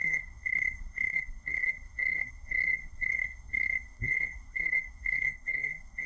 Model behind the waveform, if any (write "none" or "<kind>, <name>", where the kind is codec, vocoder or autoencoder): codec, SNAC